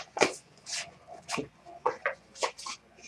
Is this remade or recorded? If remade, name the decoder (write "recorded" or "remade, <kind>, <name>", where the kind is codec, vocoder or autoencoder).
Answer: remade, vocoder, Vocos